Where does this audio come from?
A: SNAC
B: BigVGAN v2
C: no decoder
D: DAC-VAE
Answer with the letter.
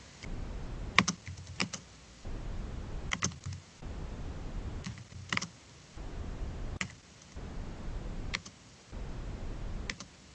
C